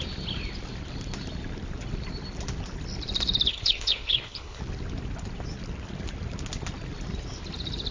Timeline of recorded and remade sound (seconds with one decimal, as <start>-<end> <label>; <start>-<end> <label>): 0.0-3.5 recorded; 3.5-4.6 remade; 4.6-7.9 recorded